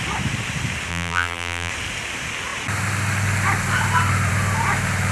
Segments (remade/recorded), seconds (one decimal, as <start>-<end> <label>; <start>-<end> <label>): 0.0-0.9 recorded; 0.9-1.7 remade; 1.7-5.1 recorded